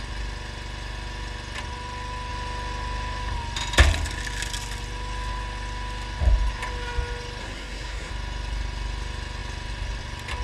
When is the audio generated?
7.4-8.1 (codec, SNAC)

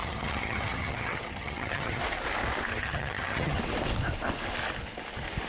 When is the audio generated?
0.0-2.0 (vocoder, HiFi-GAN); 2.7-3.6

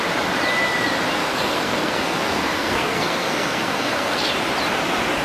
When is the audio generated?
1.2-4.3 (codec, SNAC)

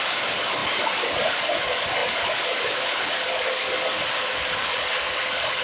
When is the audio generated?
0.0-5.6 (codec, DAC)

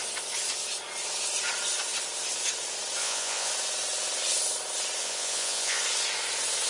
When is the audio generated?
3.0-3.5 (vocoder, Vocos); 5.0-5.8

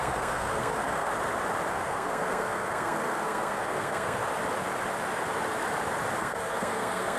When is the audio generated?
0.0-1.1 (codec, SNAC); 1.7-4.2; 6.2-7.2

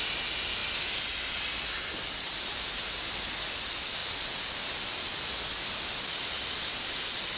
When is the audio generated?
none

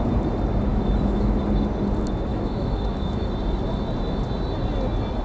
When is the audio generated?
0.7-1.4 (autoencoder, DAC-VAE); 2.3-3.3